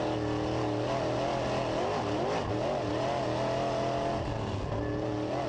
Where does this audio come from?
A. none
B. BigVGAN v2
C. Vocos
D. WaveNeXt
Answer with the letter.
A